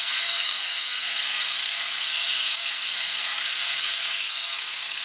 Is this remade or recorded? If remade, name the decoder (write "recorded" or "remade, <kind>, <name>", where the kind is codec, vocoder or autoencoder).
remade, codec, SNAC